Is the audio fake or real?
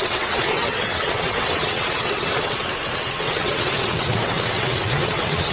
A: fake